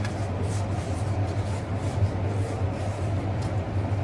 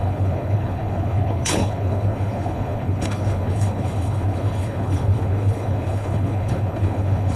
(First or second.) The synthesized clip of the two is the second